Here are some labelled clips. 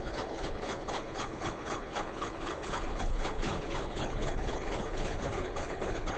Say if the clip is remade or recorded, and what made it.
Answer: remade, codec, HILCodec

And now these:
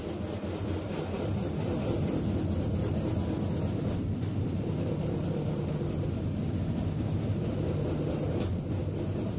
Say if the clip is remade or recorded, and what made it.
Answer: recorded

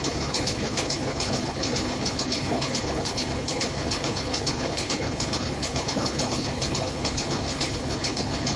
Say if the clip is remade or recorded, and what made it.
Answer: remade, codec, HILCodec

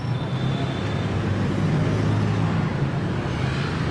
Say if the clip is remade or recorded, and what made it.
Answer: recorded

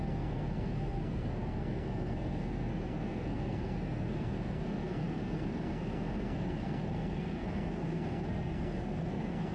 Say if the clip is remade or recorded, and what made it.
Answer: remade, codec, SNAC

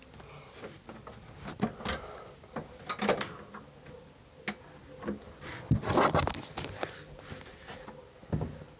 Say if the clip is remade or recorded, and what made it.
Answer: recorded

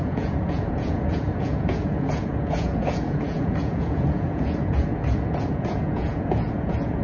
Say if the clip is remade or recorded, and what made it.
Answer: remade, vocoder, Vocos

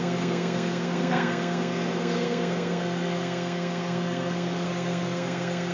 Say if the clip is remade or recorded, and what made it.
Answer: remade, codec, SNAC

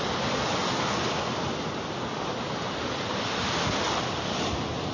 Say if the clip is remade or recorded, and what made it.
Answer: recorded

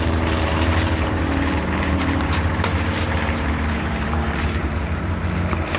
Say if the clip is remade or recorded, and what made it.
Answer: remade, vocoder, BigVGAN v2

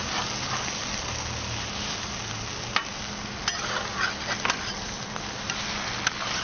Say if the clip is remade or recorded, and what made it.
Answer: recorded